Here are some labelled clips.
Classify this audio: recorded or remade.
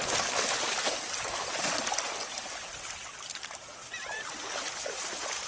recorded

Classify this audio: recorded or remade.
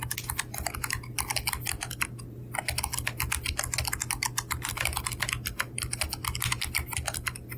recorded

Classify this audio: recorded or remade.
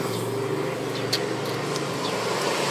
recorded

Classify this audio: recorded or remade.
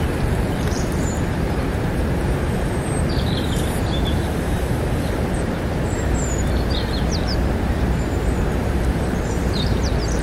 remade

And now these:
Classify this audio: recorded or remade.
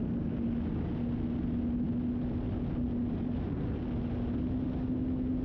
recorded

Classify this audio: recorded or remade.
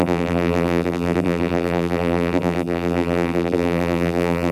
remade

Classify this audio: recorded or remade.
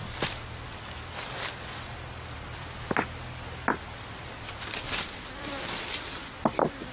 remade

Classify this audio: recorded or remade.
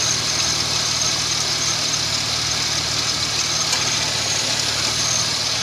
recorded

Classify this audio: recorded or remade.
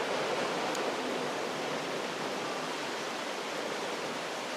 remade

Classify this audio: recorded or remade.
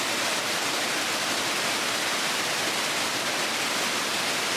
recorded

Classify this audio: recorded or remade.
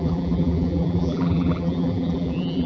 remade